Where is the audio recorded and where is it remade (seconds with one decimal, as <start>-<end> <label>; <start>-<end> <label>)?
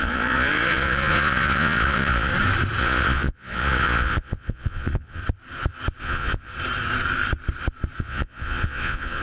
0.0-2.3 remade; 2.3-2.8 recorded; 2.8-5.2 remade; 5.2-6.0 recorded; 6.0-6.5 remade; 6.5-8.0 recorded; 8.0-9.2 remade